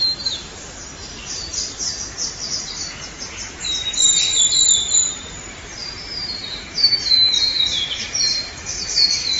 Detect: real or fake fake